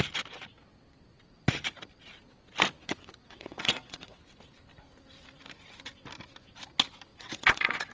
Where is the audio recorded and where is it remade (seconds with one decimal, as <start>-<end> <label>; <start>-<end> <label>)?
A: 0.0-2.8 recorded; 2.8-4.2 remade; 4.2-7.1 recorded; 7.1-7.9 remade